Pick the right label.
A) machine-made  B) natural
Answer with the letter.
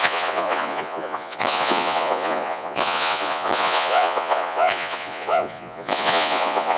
A